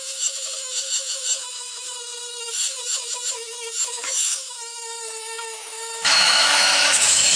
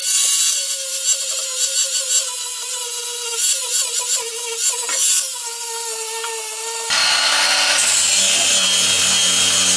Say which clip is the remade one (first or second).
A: first